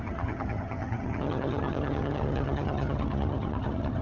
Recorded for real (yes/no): no